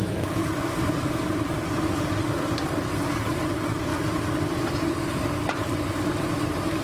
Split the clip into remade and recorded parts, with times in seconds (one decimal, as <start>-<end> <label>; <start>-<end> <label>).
0.0-0.4 recorded; 0.4-1.8 remade; 1.8-3.9 recorded; 3.9-4.7 remade; 4.7-6.8 recorded